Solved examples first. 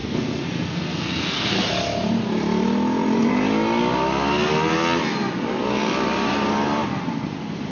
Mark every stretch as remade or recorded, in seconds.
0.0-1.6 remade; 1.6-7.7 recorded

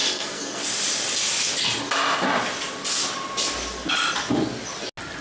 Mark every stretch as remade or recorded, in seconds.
0.0-0.6 remade; 0.6-5.2 recorded

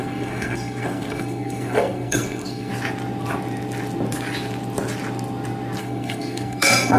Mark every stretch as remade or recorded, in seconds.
0.0-2.7 remade; 2.7-5.8 recorded; 5.8-7.0 remade

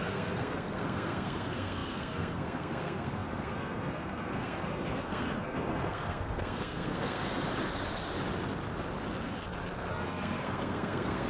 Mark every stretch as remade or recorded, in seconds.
0.0-7.5 remade; 7.5-9.9 recorded; 9.9-11.3 remade

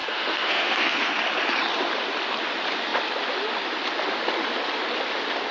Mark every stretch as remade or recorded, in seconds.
0.0-1.1 remade; 1.1-5.5 recorded

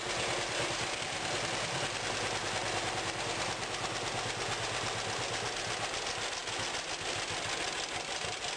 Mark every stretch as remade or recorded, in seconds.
0.0-8.6 recorded